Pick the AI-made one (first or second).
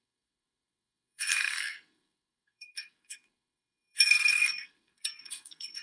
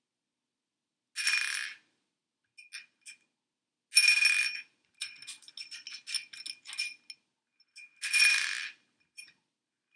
first